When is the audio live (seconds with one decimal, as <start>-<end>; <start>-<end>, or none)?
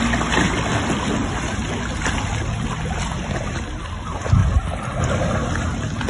0.0-6.1